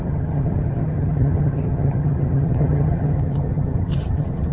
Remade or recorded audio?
remade